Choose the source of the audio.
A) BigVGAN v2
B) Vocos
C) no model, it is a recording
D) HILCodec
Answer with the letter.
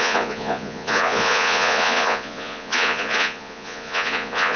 B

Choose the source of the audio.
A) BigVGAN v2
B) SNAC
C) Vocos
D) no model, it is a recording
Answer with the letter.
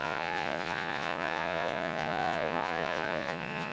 C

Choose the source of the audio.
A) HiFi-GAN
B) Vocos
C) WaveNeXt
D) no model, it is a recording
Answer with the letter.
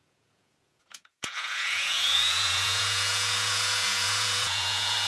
B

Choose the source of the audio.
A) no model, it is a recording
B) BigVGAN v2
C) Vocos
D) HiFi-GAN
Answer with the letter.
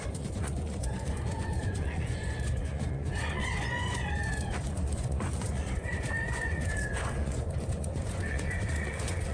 C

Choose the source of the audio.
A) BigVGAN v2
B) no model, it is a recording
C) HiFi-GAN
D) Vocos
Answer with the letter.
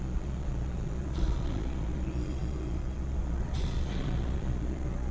D